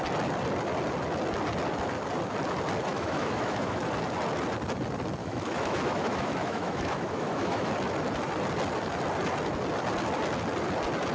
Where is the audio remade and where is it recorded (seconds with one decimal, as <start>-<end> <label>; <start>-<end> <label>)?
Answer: 0.0-2.9 recorded; 2.9-3.8 remade; 3.8-5.2 recorded; 5.2-7.7 remade; 7.7-11.1 recorded